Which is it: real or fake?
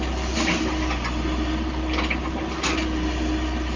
real